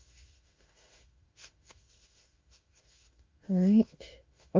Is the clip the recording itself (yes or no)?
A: no